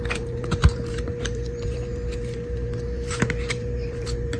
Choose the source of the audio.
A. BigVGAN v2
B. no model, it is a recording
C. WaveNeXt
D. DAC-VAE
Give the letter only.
A